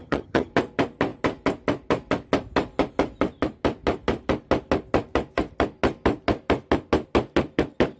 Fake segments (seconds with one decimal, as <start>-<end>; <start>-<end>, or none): 0.0-0.5